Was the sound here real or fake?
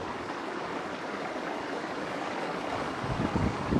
fake